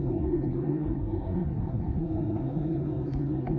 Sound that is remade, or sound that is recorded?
remade